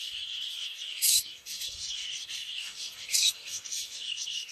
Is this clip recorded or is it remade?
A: remade